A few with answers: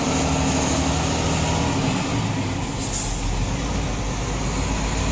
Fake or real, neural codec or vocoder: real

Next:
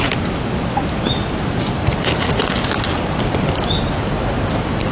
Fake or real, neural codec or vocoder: real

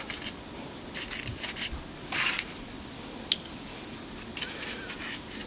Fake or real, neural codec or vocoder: real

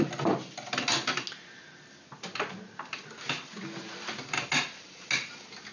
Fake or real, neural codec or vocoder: real